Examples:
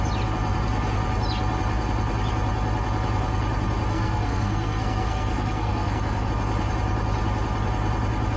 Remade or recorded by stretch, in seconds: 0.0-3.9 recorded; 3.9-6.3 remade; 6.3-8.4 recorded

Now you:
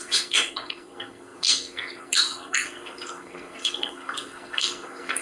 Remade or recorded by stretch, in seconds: 0.0-5.2 remade

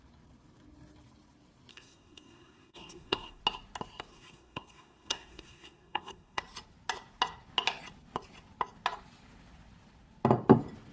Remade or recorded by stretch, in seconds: 0.0-1.7 recorded; 1.7-3.4 remade; 3.4-4.1 recorded; 4.1-6.4 remade; 6.4-10.9 recorded

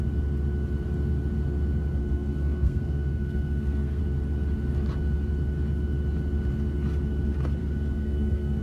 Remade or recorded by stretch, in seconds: 0.0-2.0 recorded; 2.0-4.0 remade; 4.0-7.6 recorded; 7.6-8.6 remade

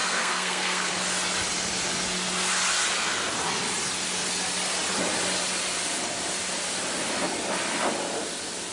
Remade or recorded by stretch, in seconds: 0.0-0.9 remade; 0.9-8.7 recorded

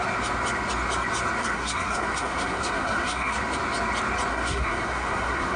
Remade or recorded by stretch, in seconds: 0.0-1.4 recorded; 1.4-3.4 remade; 3.4-4.3 recorded; 4.3-5.6 remade